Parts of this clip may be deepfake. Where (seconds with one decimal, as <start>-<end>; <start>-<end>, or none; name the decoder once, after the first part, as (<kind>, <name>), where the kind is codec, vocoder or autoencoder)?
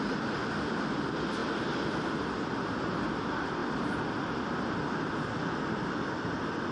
none